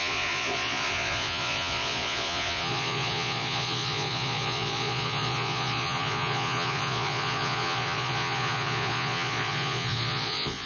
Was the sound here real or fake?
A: fake